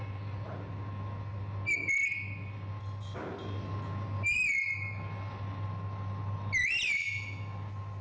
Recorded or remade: recorded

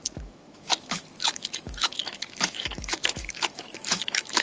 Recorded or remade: remade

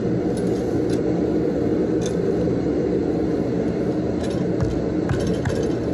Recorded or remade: recorded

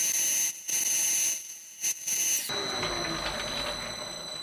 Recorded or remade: recorded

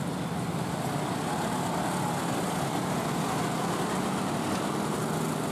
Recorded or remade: recorded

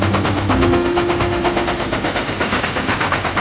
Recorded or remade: remade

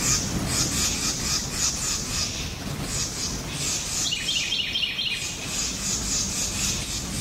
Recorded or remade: recorded